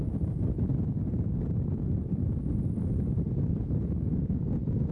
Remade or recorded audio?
recorded